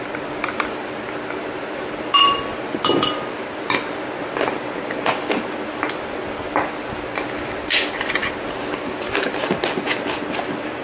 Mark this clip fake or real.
real